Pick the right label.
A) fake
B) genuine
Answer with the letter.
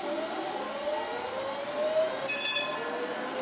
B